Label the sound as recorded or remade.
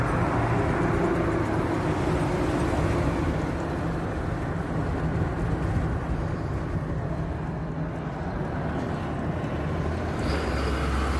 recorded